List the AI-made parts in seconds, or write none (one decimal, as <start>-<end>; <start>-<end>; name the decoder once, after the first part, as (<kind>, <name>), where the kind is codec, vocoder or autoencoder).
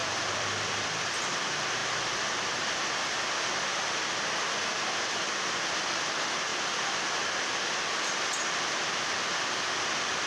0.0-1.1 (vocoder, BigVGAN v2); 6.5-7.2